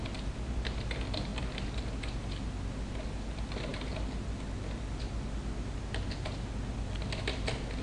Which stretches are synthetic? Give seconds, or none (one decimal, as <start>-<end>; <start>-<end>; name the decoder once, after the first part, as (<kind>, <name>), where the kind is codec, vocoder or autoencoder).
none